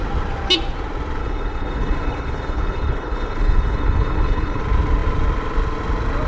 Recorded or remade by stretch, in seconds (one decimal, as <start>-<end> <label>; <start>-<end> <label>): 0.0-1.2 recorded; 1.2-4.6 remade; 4.6-6.3 recorded